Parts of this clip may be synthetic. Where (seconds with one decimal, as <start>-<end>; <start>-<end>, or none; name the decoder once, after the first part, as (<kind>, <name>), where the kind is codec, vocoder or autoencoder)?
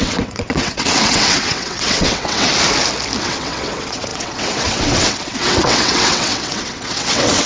0.0-2.5 (vocoder, WaveNeXt); 3.2-7.5